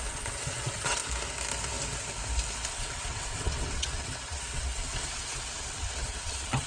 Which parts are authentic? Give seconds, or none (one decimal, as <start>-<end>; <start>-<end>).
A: 1.0-2.7